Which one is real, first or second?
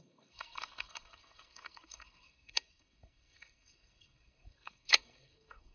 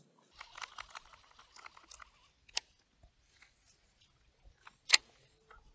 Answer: second